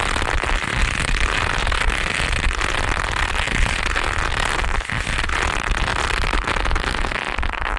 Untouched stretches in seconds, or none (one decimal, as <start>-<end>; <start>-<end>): 0.0-7.8